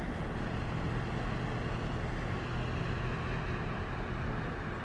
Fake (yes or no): no